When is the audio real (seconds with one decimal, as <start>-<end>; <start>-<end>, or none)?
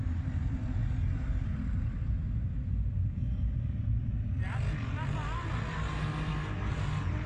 0.0-7.3